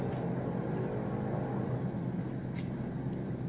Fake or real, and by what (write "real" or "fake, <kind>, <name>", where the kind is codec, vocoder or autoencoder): real